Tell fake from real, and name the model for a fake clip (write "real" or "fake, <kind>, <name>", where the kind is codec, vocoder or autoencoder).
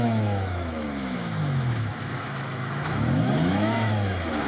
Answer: fake, autoencoder, DAC-VAE